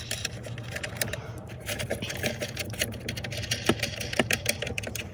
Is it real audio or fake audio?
real